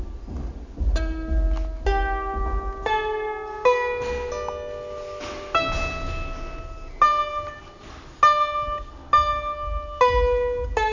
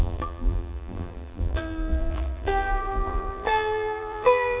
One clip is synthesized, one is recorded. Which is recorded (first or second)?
first